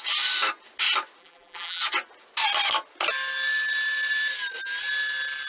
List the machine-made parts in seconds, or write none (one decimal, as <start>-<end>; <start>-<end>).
1.2-1.8